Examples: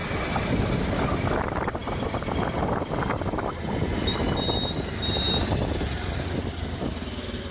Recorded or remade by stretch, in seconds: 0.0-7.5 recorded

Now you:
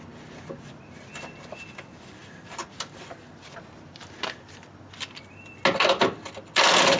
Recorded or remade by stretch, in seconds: 0.0-7.0 recorded